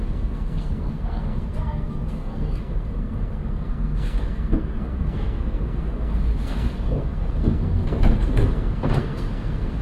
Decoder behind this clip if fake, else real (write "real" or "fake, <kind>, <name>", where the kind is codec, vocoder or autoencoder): fake, codec, SNAC